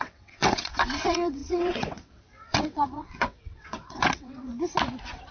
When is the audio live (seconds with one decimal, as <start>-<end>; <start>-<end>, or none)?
4.5-5.3